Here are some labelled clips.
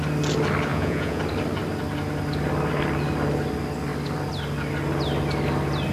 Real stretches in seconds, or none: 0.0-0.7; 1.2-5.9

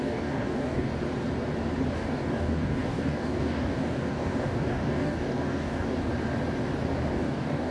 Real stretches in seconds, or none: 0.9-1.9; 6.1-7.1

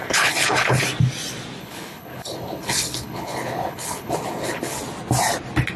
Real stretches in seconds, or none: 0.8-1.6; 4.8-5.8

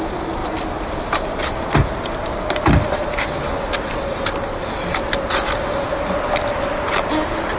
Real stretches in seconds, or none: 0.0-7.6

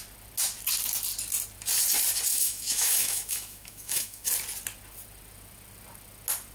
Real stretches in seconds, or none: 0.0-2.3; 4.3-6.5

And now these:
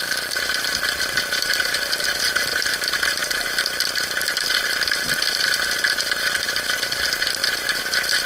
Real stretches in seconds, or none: 0.0-8.3

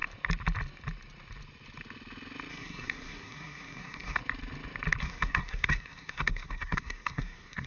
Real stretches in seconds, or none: 0.0-2.5; 4.2-5.0

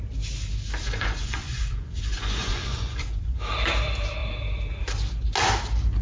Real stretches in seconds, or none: 0.0-0.8; 3.4-6.0